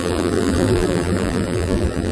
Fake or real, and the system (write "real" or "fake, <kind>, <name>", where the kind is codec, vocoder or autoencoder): fake, vocoder, BigVGAN v2